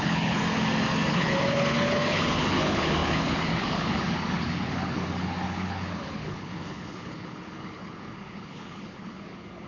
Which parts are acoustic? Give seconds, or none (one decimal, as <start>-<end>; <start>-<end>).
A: 0.4-1.1